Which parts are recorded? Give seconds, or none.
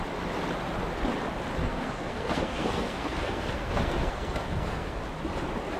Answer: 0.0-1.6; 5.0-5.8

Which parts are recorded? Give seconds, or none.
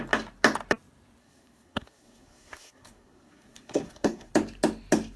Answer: 0.0-1.2; 4.3-5.2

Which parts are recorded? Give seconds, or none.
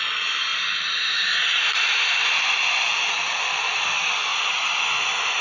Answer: 0.0-0.5; 3.7-5.4